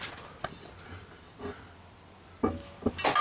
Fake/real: real